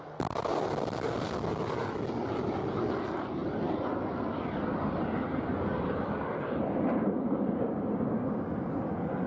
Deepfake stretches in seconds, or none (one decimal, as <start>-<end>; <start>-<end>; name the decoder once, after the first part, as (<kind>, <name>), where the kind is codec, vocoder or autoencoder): none